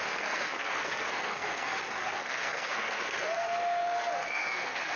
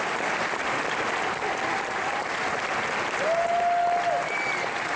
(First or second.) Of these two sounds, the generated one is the first